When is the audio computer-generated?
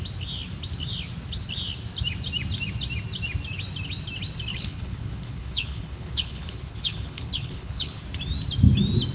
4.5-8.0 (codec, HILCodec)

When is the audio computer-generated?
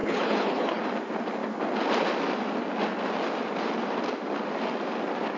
0.0-0.8 (codec, HILCodec)